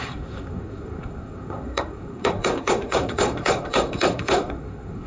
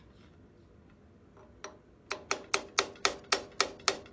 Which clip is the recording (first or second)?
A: second